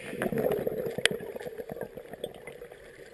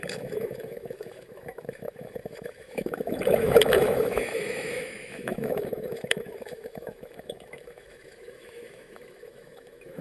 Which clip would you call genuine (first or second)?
first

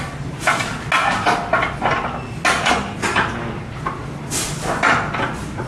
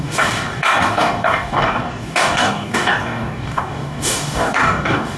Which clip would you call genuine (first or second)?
first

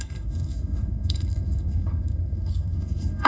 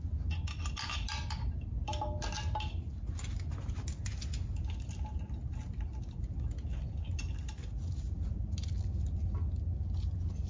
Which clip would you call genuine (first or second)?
second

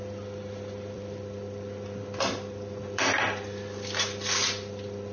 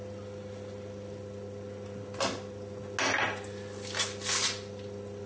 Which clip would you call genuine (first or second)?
second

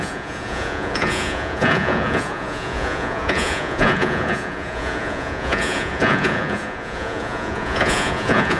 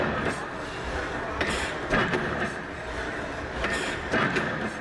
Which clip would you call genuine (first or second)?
second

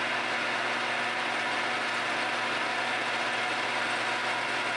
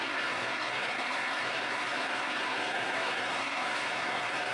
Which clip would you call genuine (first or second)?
first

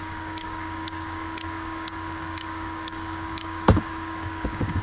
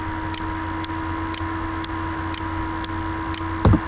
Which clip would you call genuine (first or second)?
second